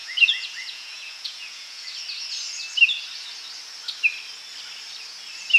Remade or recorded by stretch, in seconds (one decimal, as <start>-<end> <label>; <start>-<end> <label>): 0.0-1.9 remade; 1.9-5.6 recorded